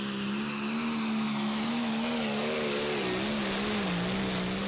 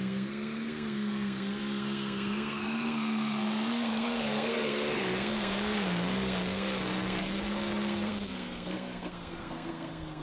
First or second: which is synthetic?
second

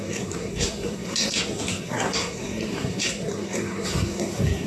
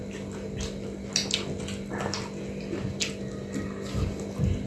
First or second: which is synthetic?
first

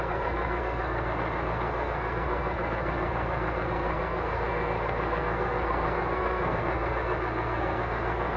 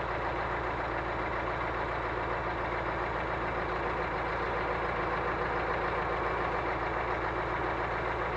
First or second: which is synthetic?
first